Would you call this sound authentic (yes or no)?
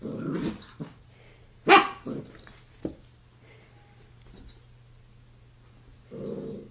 yes